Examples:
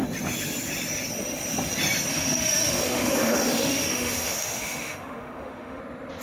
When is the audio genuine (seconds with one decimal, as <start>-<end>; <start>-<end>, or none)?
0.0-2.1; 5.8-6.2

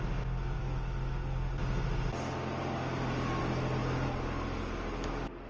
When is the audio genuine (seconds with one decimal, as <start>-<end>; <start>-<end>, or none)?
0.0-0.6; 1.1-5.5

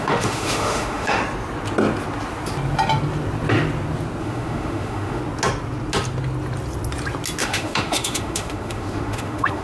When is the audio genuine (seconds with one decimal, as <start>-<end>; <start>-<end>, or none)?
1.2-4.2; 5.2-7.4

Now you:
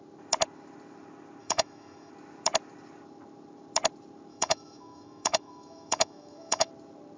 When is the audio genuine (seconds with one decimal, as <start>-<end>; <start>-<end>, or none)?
0.0-1.4; 2.1-4.3; 6.7-7.2

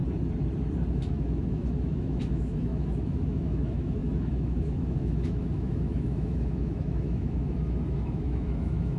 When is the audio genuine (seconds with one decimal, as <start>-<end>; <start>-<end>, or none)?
0.0-0.9

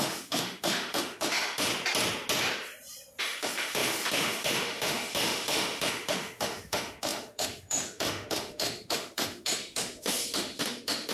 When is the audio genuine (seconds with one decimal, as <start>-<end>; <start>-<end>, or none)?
1.7-3.2